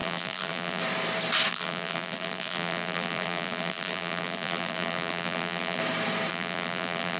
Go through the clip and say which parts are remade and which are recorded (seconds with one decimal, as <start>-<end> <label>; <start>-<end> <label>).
0.0-0.8 remade; 0.8-1.5 recorded; 1.5-5.8 remade; 5.8-6.3 recorded; 6.3-7.2 remade